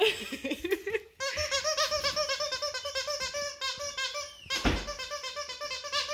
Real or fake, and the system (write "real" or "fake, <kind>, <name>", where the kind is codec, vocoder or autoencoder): real